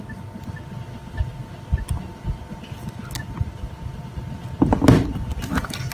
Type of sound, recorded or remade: recorded